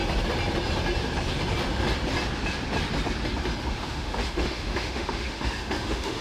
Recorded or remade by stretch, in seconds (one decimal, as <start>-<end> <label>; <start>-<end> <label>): 0.0-3.7 recorded; 3.7-6.2 remade